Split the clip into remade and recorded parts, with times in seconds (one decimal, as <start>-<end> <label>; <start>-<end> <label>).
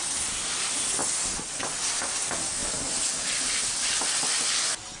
0.0-5.0 recorded